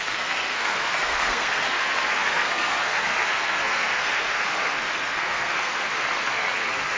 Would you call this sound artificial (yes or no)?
yes